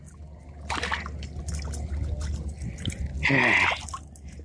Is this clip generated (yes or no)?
no